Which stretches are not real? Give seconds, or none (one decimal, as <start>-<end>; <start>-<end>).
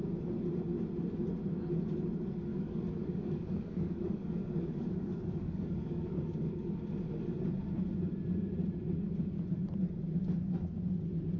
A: 2.5-6.8